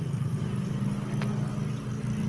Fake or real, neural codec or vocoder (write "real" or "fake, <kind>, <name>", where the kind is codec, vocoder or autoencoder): real